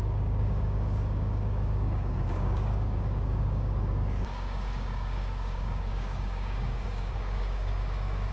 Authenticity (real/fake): fake